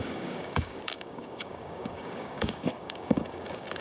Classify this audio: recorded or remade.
remade